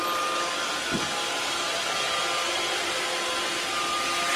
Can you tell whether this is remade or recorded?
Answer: recorded